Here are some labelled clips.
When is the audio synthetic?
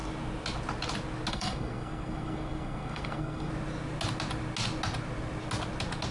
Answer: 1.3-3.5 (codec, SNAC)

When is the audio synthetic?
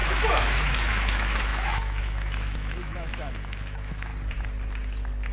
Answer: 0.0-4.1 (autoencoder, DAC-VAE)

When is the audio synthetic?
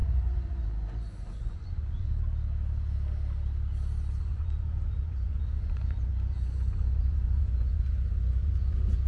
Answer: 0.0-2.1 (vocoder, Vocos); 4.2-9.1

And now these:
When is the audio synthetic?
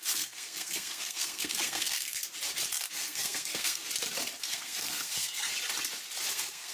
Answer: 0.0-2.2 (codec, SNAC); 2.9-3.8; 4.4-5.5; 6.3-6.7